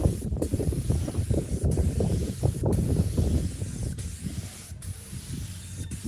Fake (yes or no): yes